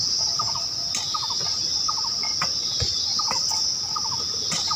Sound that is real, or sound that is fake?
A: real